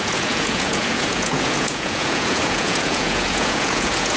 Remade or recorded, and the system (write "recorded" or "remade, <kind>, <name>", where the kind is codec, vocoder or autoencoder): remade, vocoder, Vocos